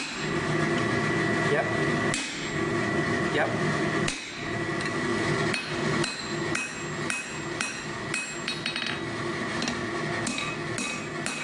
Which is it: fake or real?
real